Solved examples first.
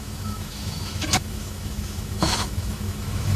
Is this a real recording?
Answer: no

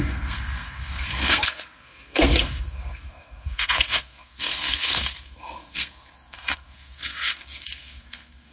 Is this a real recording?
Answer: no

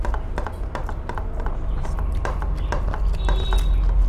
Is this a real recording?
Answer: yes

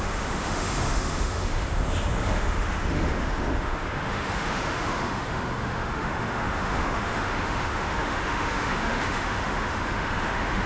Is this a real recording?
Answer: no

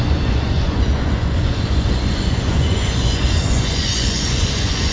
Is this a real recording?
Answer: no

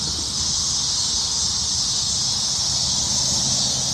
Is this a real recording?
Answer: yes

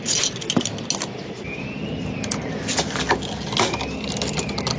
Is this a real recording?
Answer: yes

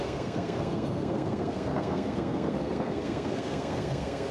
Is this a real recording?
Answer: no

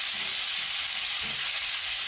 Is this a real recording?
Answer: yes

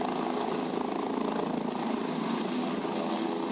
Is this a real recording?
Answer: yes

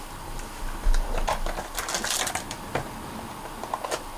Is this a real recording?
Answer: yes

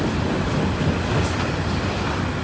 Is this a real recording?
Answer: yes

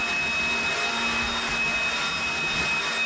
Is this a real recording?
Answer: yes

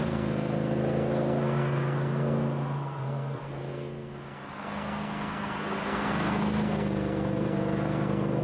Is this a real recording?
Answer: no